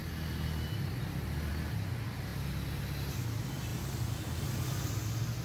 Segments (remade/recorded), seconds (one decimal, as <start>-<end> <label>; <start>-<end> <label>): 0.0-5.4 recorded